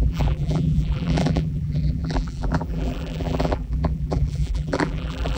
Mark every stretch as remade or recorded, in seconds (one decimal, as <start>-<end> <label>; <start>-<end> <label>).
0.0-5.4 remade